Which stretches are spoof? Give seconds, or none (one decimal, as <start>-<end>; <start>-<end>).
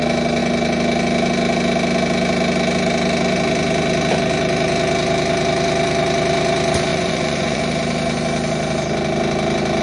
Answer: 6.9-7.6